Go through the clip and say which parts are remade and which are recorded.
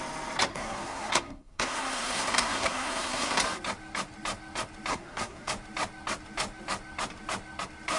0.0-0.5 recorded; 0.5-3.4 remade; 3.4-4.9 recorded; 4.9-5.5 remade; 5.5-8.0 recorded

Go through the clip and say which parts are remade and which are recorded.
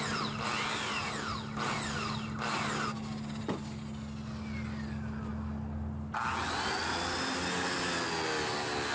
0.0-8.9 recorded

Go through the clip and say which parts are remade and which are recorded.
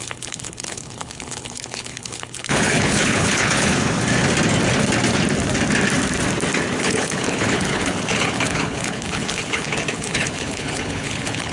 0.0-3.7 remade; 3.7-6.8 recorded; 6.8-11.5 remade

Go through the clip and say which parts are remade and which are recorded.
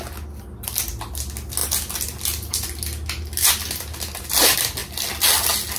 0.0-5.8 recorded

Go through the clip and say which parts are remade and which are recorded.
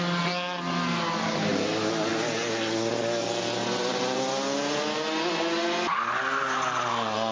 0.0-7.3 recorded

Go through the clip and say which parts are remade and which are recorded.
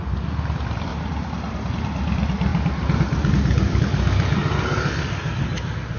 0.0-0.9 recorded; 0.9-1.7 remade; 1.7-6.0 recorded